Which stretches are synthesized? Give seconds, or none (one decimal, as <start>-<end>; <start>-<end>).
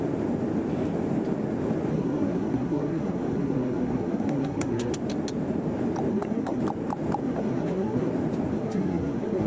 1.9-4.9; 6.1-6.6; 7.2-8.1; 8.5-9.5